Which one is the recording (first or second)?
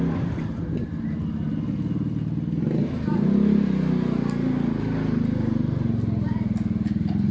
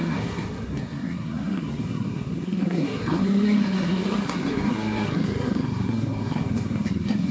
first